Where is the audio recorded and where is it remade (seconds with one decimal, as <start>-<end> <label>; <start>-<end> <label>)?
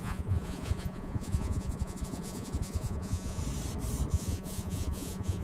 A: 0.0-3.4 remade; 3.4-4.1 recorded; 4.1-5.4 remade